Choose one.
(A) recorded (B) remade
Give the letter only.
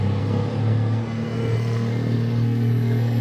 B